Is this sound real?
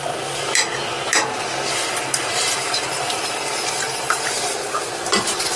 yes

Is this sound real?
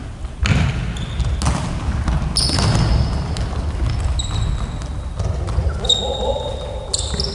yes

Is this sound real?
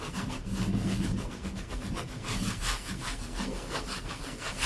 no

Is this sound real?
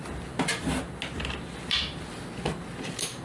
yes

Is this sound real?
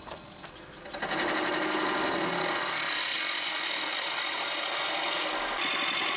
yes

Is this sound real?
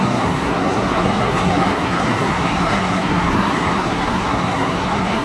no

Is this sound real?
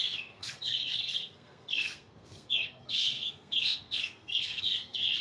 no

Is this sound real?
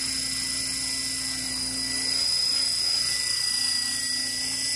yes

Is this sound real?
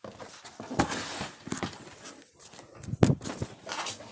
yes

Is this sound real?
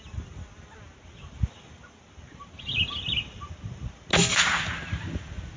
yes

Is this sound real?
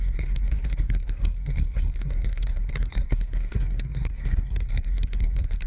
no